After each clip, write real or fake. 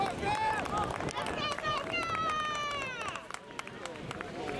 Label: real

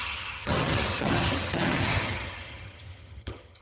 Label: fake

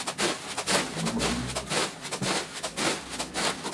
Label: real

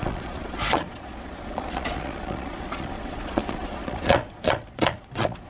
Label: fake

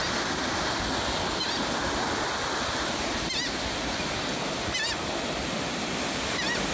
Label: real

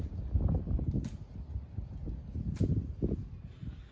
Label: real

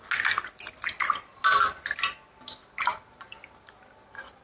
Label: real